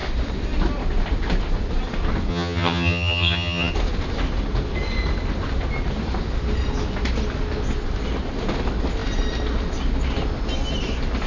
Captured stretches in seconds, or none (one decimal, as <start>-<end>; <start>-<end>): 0.0-2.3; 3.7-11.3